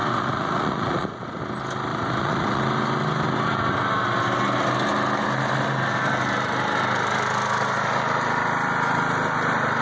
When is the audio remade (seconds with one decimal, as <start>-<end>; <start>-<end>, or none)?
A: 0.0-1.4; 1.9-2.6